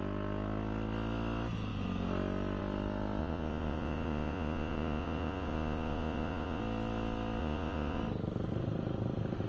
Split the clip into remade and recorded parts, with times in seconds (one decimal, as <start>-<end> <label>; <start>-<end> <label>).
0.0-3.2 recorded; 3.2-6.6 remade; 6.6-7.4 recorded; 7.4-8.0 remade; 8.0-9.5 recorded